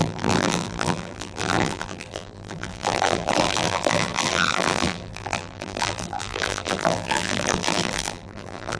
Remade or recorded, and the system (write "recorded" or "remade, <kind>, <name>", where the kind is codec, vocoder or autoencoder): remade, vocoder, BigVGAN v2